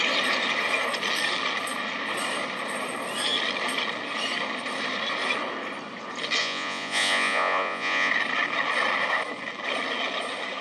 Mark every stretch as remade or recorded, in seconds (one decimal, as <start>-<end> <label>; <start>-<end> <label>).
0.0-6.4 recorded; 6.4-8.1 remade; 8.1-10.6 recorded